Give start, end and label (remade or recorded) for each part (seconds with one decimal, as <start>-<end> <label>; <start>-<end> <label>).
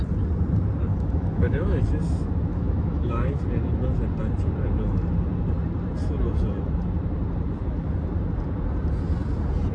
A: 0.0-0.9 recorded; 0.9-1.8 remade; 1.8-2.5 recorded; 2.5-3.4 remade; 3.4-9.7 recorded